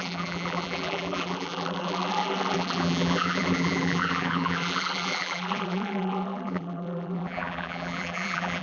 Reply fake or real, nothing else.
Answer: fake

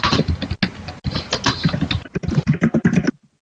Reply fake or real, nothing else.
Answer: real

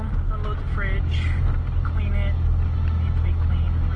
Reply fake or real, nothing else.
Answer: real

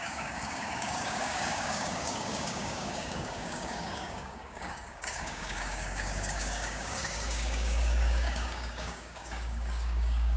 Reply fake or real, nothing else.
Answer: fake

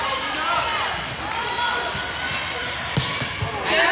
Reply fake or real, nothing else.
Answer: real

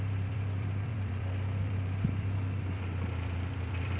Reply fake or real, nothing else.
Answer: fake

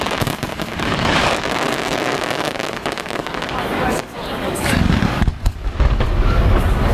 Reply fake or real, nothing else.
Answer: fake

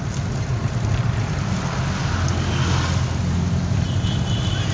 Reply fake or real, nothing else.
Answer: real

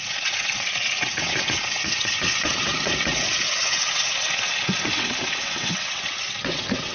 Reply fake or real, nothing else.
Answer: fake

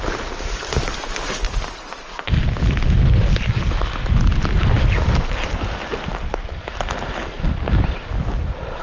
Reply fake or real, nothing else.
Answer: real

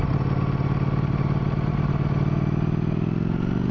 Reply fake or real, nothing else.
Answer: real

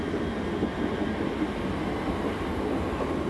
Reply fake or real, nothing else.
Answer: real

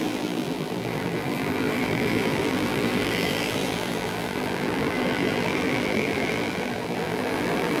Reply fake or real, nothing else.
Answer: fake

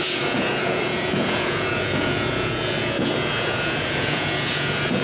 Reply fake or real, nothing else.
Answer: fake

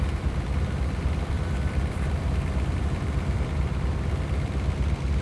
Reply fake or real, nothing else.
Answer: fake